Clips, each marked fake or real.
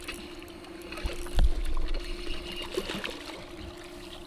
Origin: real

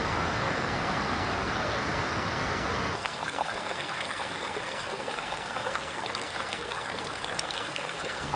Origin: fake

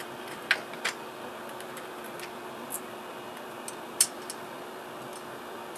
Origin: real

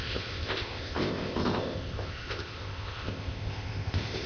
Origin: fake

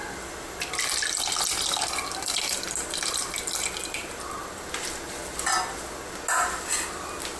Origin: real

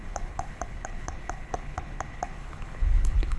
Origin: fake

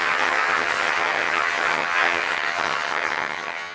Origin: fake